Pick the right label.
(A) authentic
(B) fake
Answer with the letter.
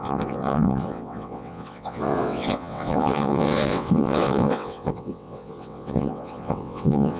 B